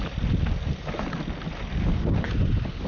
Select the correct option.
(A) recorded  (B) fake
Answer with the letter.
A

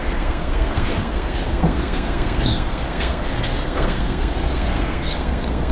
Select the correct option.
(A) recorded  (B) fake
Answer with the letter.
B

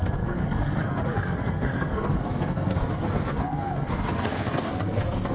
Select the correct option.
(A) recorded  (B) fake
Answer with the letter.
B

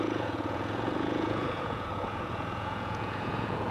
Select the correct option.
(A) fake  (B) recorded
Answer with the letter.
A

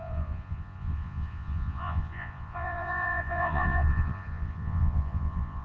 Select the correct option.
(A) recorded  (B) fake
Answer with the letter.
B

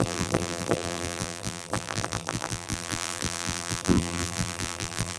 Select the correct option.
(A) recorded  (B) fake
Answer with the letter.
B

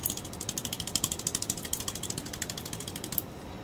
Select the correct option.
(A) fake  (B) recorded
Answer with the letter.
B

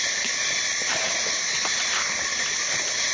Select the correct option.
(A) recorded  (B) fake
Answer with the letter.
A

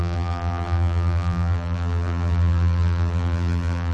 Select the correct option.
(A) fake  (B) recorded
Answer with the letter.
A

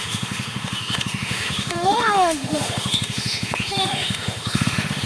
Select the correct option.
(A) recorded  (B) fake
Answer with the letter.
B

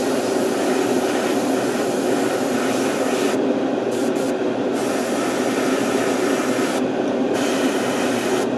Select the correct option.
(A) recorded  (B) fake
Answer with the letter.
A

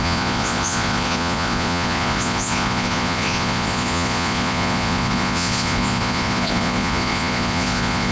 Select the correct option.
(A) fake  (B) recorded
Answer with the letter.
A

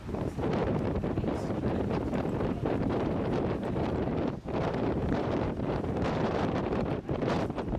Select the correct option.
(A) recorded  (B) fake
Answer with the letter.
B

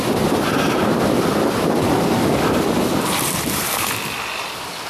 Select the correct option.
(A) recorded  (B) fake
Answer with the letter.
A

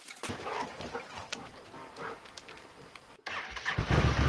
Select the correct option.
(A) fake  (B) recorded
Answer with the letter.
B